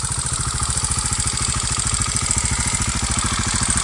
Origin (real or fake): real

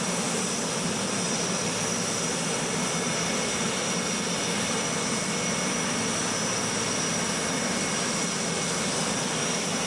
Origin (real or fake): real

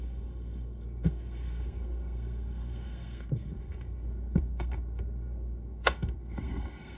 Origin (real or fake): fake